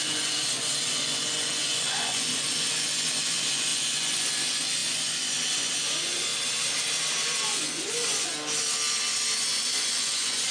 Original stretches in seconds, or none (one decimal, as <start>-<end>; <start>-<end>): 6.3-7.4; 8.3-9.5